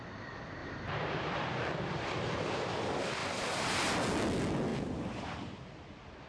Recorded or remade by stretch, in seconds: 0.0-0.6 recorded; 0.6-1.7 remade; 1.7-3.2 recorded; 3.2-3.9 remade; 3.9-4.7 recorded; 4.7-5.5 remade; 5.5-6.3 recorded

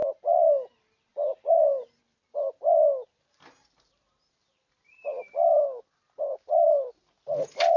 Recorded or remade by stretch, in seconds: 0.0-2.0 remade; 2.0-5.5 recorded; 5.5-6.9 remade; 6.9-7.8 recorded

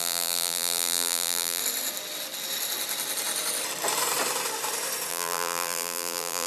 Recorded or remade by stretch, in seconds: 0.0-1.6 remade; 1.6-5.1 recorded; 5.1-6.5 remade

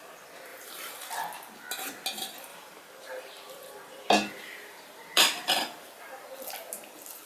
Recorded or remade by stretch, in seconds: 0.0-2.5 recorded; 2.5-5.9 remade; 5.9-7.3 recorded

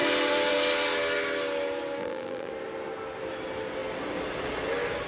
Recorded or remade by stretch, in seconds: 0.0-2.0 recorded; 2.0-2.5 remade; 2.5-5.1 recorded

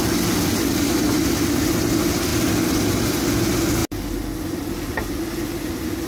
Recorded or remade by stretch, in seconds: 0.0-6.1 recorded

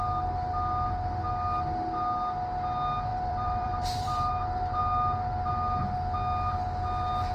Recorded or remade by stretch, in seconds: 0.0-3.1 recorded; 3.1-4.3 remade; 4.3-7.3 recorded